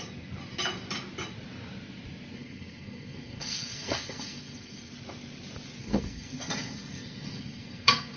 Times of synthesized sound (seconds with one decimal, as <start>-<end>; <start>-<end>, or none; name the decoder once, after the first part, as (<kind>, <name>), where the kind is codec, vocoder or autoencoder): 2.3-4.9 (codec, SNAC); 5.8-8.2